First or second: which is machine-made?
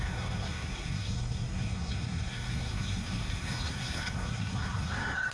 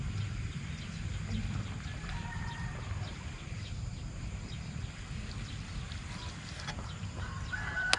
first